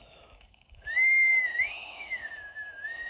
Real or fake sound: fake